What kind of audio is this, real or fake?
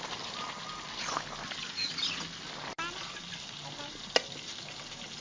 real